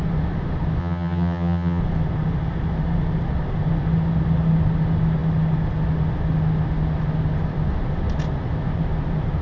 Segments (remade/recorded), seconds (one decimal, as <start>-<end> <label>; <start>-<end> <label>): 0.0-0.8 recorded; 0.8-1.8 remade; 1.8-9.4 recorded